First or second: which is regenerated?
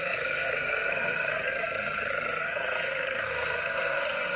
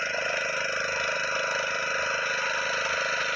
first